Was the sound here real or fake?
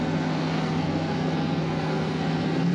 fake